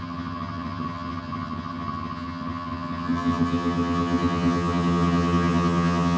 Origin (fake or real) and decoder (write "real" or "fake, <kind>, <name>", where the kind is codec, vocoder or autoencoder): fake, vocoder, HiFi-GAN